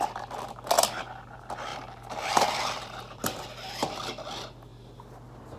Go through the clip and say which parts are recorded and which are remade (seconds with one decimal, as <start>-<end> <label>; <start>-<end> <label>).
0.0-1.7 recorded; 1.7-3.2 remade; 3.2-5.6 recorded

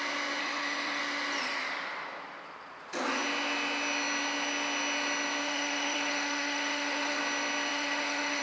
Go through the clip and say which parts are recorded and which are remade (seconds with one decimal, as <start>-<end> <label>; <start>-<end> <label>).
0.0-0.4 recorded; 0.4-1.0 remade; 1.0-5.4 recorded; 5.4-7.2 remade; 7.2-7.7 recorded; 7.7-8.4 remade

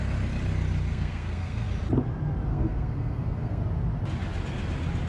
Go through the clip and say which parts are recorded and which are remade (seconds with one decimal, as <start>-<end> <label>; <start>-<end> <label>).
0.0-0.9 recorded; 0.9-1.7 remade; 1.7-2.5 recorded; 2.5-3.6 remade; 3.6-5.1 recorded

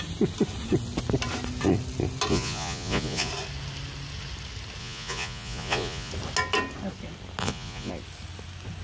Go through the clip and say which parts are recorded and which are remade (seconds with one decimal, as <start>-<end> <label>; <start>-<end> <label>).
0.0-2.3 recorded; 2.3-3.3 remade; 3.3-4.8 recorded; 4.8-6.1 remade; 6.1-7.4 recorded; 7.4-7.9 remade; 7.9-8.8 recorded